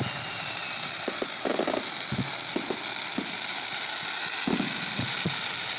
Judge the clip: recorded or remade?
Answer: recorded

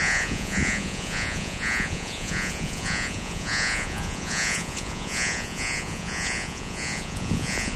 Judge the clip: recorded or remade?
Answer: remade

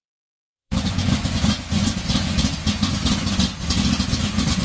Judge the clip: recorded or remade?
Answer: remade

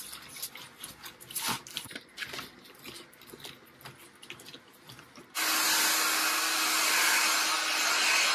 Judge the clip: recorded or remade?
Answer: recorded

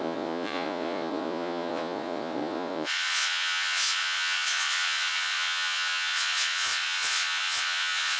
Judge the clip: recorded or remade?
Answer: remade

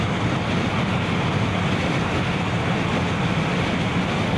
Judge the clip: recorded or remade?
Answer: recorded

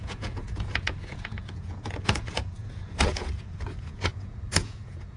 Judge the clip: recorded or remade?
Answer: remade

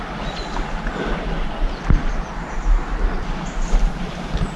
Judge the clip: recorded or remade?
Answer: recorded